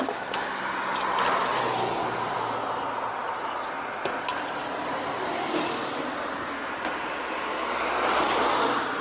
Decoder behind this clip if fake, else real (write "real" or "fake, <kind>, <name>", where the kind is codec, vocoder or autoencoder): real